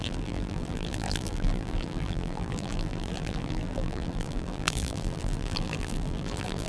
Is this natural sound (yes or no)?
no